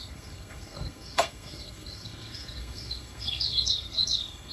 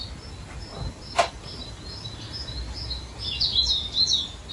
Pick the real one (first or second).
second